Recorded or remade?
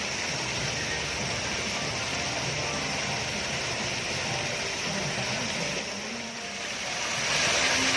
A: recorded